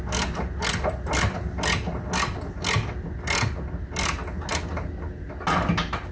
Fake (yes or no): no